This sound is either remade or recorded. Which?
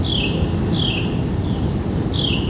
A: recorded